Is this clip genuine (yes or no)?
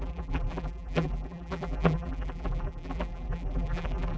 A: no